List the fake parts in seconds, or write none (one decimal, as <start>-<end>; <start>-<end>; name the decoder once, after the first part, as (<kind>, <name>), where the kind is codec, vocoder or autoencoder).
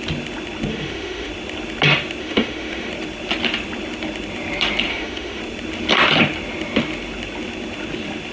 0.7-1.3 (autoencoder, DAC-VAE); 2.2-2.9; 4.9-5.4